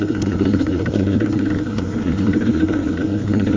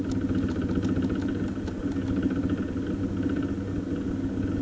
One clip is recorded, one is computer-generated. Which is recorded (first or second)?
second